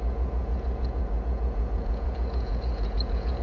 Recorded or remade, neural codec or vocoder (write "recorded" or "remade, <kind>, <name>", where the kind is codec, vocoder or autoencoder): remade, vocoder, Vocos